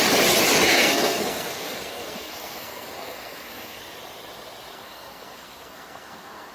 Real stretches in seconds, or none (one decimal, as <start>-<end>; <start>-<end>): 0.0-0.7; 3.8-4.7

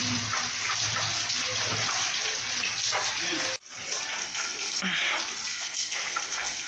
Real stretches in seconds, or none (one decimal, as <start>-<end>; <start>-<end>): 0.0-4.2; 4.8-5.5